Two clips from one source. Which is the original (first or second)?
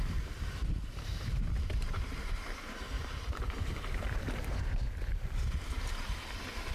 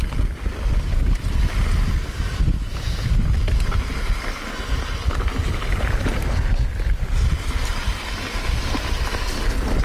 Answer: second